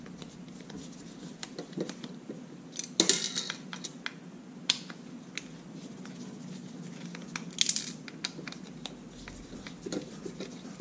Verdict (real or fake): real